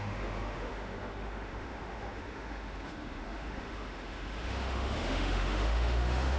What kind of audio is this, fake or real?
fake